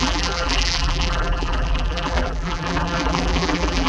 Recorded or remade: remade